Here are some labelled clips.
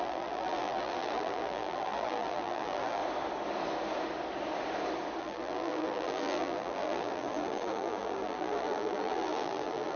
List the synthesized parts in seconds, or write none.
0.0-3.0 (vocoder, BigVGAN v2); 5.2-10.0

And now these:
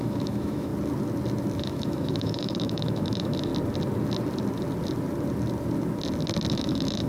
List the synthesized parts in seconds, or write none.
0.0-0.7 (autoencoder, DAC-VAE); 1.6-3.5; 6.5-7.1

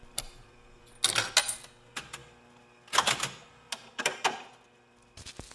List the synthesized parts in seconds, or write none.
none

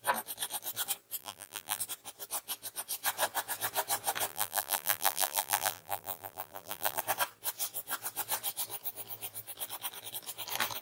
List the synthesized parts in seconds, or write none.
1.2-1.8 (vocoder, BigVGAN v2); 4.3-7.0

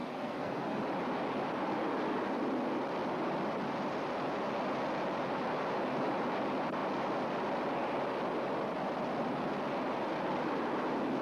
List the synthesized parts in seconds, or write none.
0.0-0.8 (codec, SNAC)